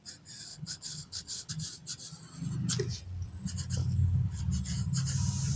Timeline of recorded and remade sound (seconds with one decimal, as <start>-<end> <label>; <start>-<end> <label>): 0.0-0.5 recorded; 0.5-1.5 remade; 1.5-3.8 recorded; 3.8-4.4 remade; 4.4-5.6 recorded